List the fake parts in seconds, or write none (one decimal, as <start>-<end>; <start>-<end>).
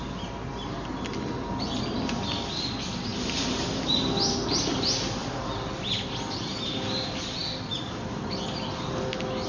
none